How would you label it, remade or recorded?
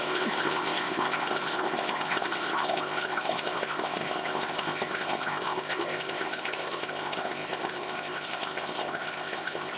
remade